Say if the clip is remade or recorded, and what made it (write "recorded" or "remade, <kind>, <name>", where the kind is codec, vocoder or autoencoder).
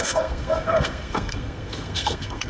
remade, codec, SNAC